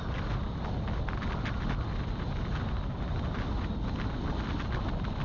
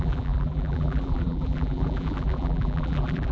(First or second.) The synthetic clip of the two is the second